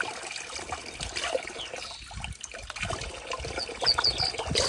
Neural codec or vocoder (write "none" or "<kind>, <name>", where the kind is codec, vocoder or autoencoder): none